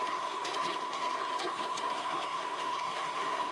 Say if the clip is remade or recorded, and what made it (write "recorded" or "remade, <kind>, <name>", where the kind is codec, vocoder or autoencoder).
remade, codec, SNAC